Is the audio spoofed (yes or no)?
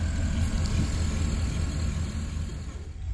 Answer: no